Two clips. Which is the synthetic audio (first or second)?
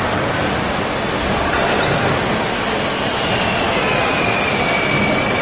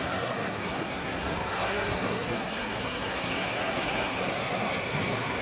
second